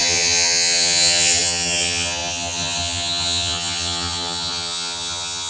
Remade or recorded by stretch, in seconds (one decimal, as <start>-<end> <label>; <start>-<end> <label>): 0.0-5.5 remade